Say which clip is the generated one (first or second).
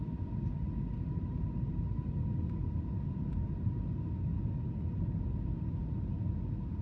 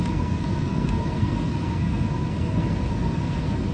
second